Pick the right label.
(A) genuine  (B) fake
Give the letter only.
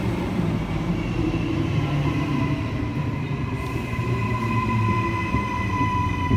B